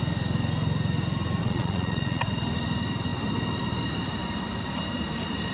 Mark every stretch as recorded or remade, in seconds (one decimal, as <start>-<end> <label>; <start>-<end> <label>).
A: 0.0-1.4 recorded; 1.4-2.2 remade; 2.2-5.5 recorded